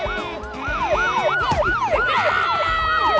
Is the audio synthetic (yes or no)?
no